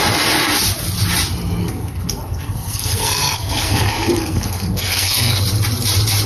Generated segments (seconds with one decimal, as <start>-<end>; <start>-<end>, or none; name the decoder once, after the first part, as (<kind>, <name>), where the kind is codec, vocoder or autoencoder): 1.6-5.4 (codec, SNAC)